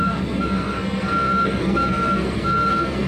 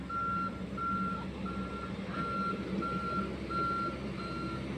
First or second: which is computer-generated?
first